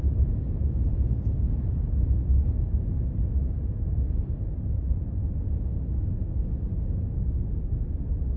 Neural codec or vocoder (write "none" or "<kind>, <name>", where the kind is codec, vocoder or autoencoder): none